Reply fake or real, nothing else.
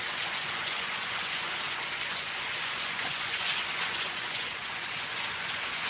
fake